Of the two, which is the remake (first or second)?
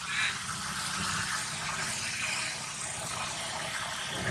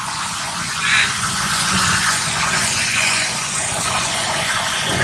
second